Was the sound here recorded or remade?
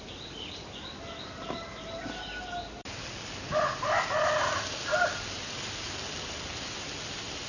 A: recorded